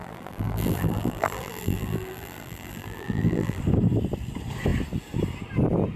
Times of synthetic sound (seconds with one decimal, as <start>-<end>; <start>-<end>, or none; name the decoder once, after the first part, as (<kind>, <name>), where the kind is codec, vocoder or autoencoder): 0.0-3.6 (vocoder, BigVGAN v2)